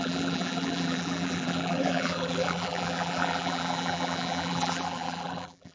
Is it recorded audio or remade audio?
remade